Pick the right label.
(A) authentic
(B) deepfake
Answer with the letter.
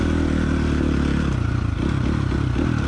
A